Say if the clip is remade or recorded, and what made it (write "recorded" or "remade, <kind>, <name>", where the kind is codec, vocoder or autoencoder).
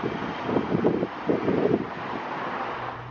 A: recorded